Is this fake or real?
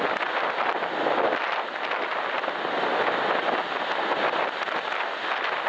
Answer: real